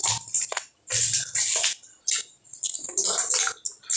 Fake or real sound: real